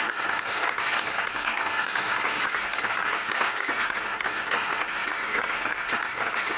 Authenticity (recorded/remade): remade